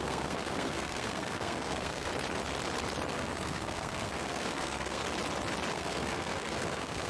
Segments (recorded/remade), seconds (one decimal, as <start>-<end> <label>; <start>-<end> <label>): 0.0-2.1 remade; 2.1-3.1 recorded; 3.1-5.0 remade; 5.0-5.7 recorded; 5.7-7.1 remade